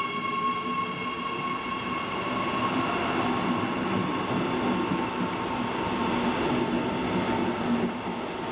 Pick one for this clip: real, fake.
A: real